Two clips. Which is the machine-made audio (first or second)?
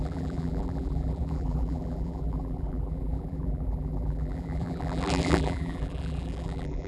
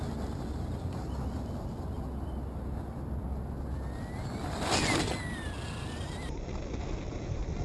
first